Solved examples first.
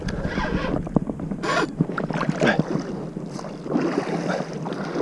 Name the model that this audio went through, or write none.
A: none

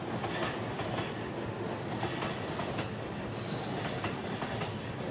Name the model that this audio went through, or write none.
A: none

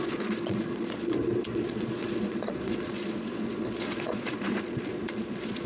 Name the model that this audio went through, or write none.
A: vocoder, Vocos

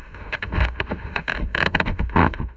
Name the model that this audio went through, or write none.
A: autoencoder, DAC-VAE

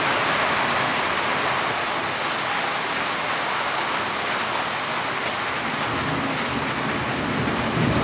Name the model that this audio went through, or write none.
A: none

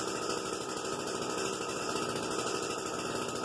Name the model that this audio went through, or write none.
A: none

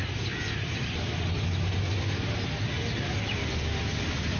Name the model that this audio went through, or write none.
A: none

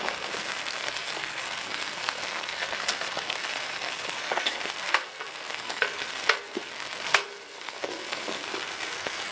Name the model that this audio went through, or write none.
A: codec, SNAC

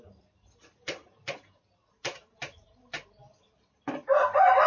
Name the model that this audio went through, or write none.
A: vocoder, BigVGAN v2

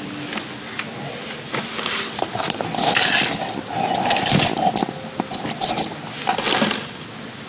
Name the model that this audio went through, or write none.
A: none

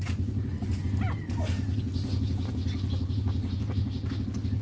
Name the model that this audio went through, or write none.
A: none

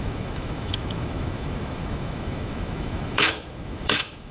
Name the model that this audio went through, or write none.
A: autoencoder, DAC-VAE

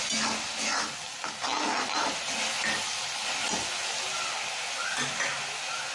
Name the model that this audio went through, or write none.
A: none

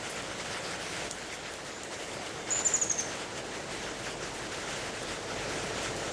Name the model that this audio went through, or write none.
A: none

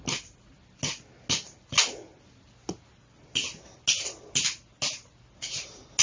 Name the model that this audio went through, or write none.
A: none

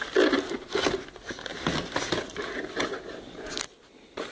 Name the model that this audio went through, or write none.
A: none